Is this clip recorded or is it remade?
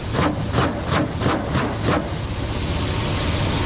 recorded